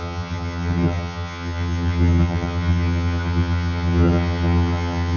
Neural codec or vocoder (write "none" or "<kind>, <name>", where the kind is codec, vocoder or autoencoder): vocoder, HiFi-GAN